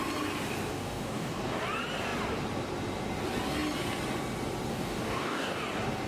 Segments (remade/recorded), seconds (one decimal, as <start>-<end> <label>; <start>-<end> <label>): 0.0-0.7 recorded; 0.7-1.6 remade; 1.6-4.7 recorded; 4.7-5.6 remade; 5.6-6.1 recorded